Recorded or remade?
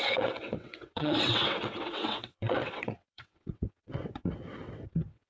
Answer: remade